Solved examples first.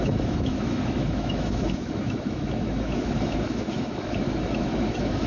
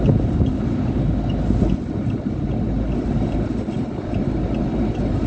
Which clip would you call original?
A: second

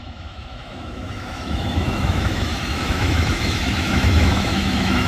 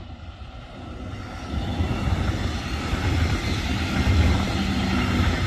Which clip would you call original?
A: second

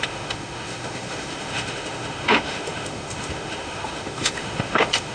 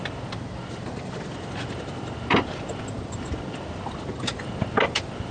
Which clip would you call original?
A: second